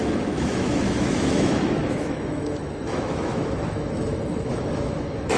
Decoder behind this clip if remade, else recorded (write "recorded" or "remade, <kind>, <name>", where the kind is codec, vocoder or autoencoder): remade, autoencoder, DAC-VAE